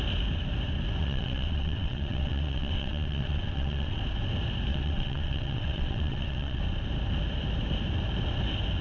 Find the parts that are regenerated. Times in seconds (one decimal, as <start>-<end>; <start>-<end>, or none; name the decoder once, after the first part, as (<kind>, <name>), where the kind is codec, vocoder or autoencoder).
1.0-4.0 (vocoder, WaveNeXt); 4.7-6.6